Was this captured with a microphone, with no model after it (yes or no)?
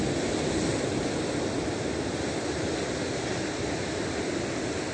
yes